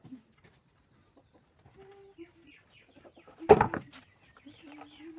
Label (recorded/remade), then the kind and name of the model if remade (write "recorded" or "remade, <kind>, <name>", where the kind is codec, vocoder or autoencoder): recorded